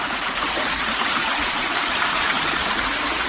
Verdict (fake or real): fake